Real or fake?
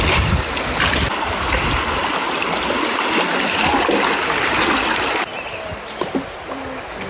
real